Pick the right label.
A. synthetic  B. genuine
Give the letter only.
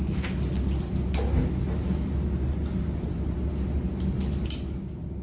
B